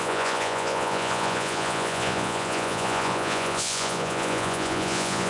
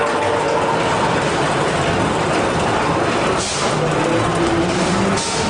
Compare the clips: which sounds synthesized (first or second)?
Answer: first